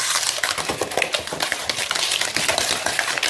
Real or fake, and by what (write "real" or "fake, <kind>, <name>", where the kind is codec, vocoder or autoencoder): real